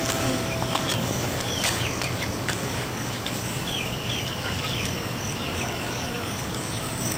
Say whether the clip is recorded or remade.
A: remade